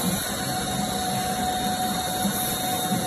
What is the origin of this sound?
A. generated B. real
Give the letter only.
B